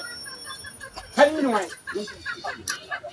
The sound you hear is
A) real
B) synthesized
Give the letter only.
A